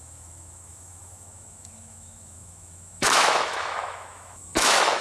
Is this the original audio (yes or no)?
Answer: no